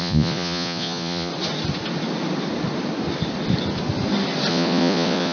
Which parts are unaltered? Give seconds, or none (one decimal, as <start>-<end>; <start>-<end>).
1.3-4.5